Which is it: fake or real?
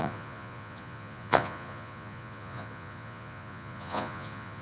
fake